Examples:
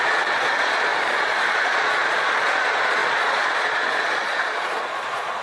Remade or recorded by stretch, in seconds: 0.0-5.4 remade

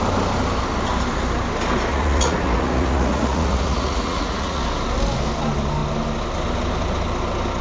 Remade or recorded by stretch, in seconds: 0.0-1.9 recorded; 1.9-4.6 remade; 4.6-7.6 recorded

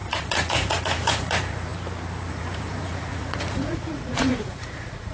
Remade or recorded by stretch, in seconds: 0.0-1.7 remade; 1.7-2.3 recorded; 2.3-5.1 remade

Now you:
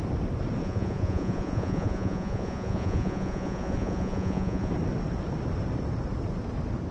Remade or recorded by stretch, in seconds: 0.0-0.6 recorded; 0.6-4.7 remade; 4.7-6.9 recorded

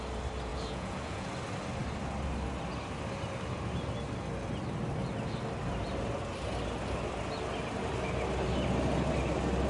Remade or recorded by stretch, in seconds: 0.0-0.5 recorded; 0.5-1.3 remade; 1.3-9.7 recorded

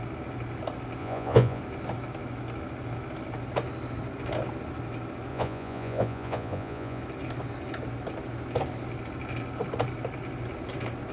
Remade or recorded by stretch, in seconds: 0.0-1.0 recorded; 1.0-1.6 remade; 1.6-5.3 recorded; 5.3-7.0 remade; 7.0-11.1 recorded

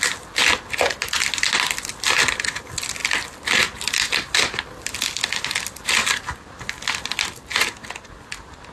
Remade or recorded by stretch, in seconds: 0.0-8.7 recorded

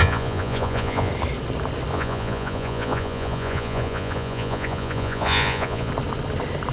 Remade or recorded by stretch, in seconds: 0.0-1.1 remade; 1.1-1.9 recorded; 1.9-5.9 remade; 5.9-6.7 recorded